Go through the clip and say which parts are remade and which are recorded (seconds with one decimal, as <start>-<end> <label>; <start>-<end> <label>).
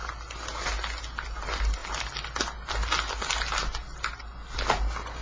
0.0-5.2 recorded